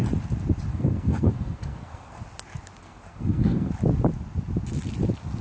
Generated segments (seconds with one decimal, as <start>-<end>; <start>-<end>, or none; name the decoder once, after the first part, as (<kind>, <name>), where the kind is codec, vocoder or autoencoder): 0.7-2.2 (codec, SNAC); 2.8-3.7